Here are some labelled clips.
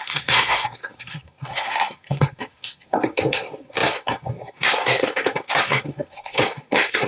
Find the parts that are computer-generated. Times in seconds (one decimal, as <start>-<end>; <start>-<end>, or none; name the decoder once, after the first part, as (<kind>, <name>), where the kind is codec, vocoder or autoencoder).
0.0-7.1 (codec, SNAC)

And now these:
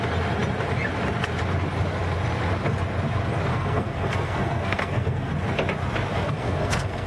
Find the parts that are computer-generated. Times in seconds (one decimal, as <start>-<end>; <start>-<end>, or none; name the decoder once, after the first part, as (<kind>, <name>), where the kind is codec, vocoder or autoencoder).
3.5-5.3 (codec, SNAC); 6.1-7.1

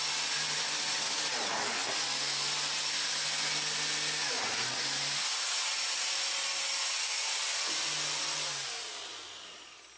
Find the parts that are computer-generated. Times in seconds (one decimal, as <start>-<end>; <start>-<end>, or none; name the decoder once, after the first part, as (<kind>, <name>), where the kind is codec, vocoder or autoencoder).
none